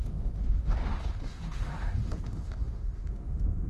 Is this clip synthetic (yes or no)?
yes